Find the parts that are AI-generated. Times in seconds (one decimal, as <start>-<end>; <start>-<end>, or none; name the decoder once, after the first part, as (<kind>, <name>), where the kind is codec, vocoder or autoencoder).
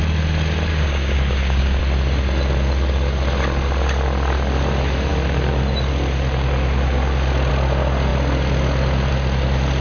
0.7-1.8 (codec, DAC)